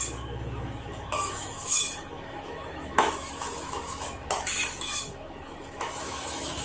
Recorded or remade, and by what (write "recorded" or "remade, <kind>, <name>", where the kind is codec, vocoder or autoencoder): remade, autoencoder, DAC-VAE